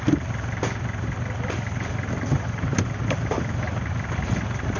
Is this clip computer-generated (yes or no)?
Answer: no